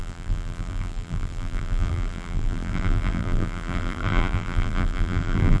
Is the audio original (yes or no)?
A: no